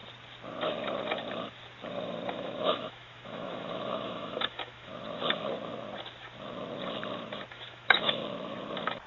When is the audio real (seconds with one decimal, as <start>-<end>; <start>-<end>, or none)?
0.0-2.3; 4.9-7.5; 8.2-9.1